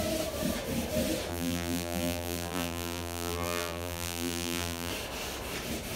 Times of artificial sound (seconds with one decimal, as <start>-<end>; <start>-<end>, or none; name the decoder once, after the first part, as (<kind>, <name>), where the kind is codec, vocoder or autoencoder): 1.3-4.9 (vocoder, BigVGAN v2)